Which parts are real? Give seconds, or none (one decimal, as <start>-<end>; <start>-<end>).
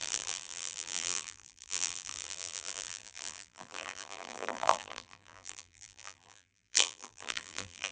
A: none